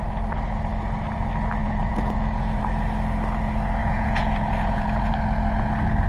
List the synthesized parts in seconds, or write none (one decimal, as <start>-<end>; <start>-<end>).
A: 1.6-2.6; 3.8-5.1